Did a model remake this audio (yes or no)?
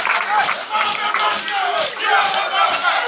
no